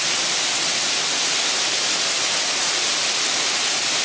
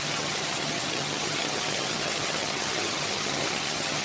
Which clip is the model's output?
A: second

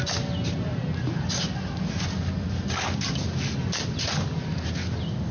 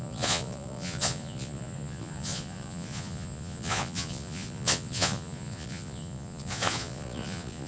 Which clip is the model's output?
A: second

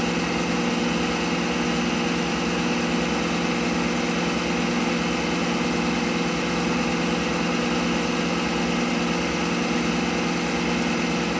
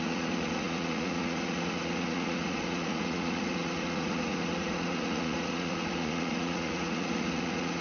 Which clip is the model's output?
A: second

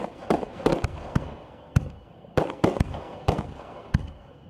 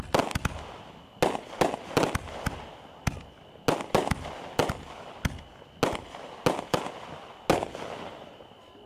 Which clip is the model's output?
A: first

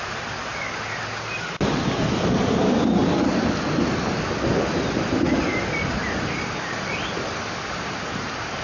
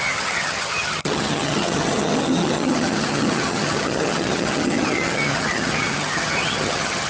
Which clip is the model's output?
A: second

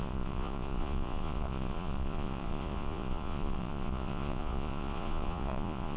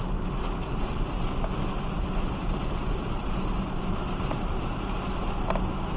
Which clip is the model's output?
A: first